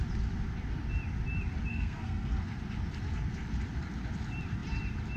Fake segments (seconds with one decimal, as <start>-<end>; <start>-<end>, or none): 1.7-2.6